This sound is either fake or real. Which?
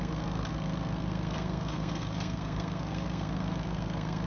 fake